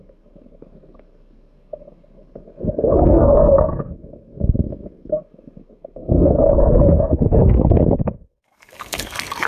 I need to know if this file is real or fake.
fake